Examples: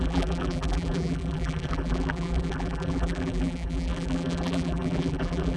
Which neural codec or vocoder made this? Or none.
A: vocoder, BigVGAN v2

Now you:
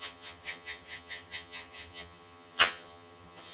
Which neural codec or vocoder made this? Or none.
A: vocoder, HiFi-GAN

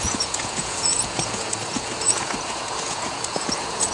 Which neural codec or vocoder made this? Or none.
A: vocoder, Vocos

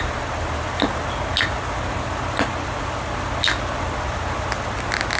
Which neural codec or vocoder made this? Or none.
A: none